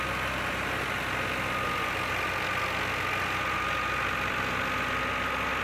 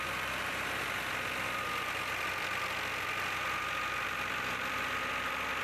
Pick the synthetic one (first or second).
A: second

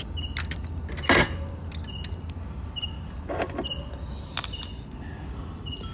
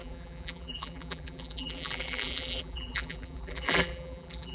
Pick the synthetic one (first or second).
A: second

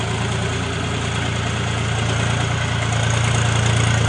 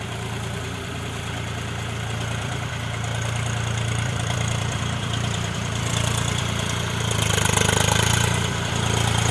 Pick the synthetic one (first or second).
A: second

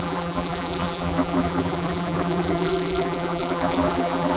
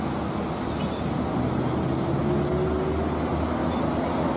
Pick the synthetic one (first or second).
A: first